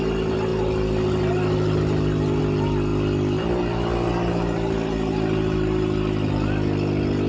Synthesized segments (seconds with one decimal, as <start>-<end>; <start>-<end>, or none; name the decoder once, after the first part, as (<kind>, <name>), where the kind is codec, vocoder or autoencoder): none